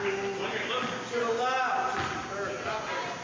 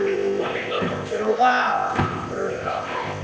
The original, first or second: first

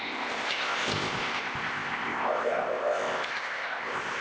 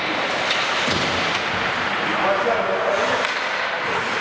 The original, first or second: second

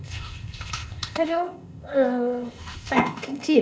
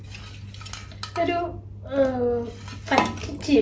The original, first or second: second